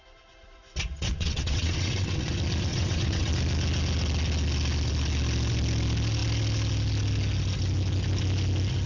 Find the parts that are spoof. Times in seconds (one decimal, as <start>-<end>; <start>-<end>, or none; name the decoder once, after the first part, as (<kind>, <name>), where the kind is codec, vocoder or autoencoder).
0.9-2.3 (vocoder, WaveNeXt); 2.7-3.3